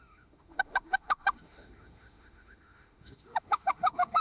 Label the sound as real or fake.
fake